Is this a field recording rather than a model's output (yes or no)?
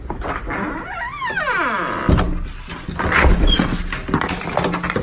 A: yes